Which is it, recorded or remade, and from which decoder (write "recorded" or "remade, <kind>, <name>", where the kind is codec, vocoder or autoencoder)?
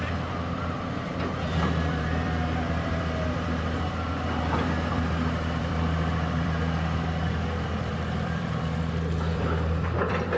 remade, vocoder, BigVGAN v2